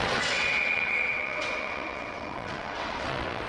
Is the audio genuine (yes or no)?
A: no